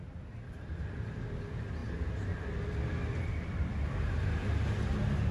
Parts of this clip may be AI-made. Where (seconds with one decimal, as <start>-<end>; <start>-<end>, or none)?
0.0-1.8; 2.7-3.7

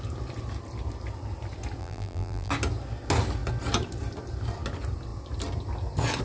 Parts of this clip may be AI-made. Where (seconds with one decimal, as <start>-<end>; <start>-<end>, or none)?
1.8-2.5

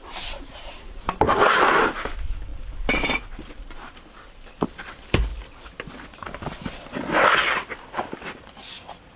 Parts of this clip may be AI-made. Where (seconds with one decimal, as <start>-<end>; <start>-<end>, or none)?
0.0-2.5; 4.1-5.3; 7.7-9.2

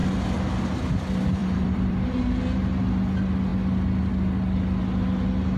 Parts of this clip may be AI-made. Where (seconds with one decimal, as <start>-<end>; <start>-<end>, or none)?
1.4-2.2

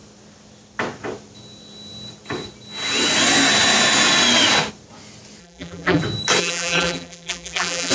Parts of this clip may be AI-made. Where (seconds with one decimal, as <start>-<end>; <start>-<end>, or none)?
5.4-6.0; 6.4-7.9

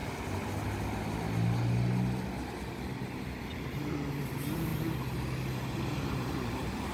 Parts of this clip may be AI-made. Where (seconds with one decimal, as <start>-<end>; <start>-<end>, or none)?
3.4-4.7; 5.4-6.9

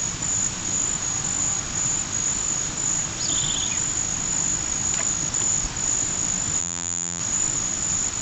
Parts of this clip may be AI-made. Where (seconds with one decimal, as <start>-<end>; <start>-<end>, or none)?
6.6-7.2

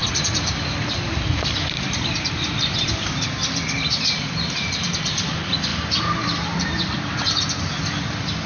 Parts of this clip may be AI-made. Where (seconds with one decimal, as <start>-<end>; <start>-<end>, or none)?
0.0-4.9; 5.7-7.6